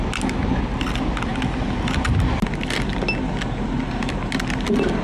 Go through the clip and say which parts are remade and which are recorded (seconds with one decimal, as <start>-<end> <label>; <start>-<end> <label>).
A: 0.0-5.0 recorded